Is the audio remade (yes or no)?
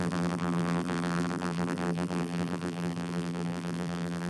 yes